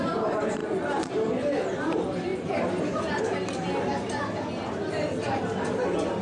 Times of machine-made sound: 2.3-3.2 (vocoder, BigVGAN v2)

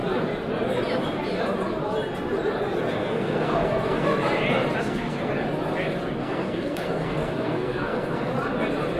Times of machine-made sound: 2.9-4.1 (codec, SNAC); 4.8-5.3; 6.2-8.3

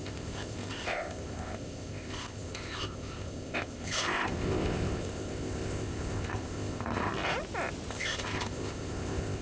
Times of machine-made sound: 0.0-7.1 (codec, ZipCodec); 7.9-9.4

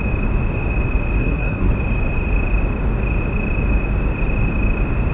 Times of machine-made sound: 1.2-1.7 (codec, SNAC)